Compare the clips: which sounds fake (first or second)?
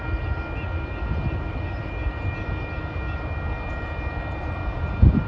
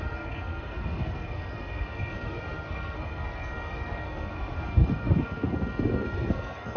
second